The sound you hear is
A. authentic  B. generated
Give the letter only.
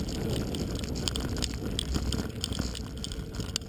A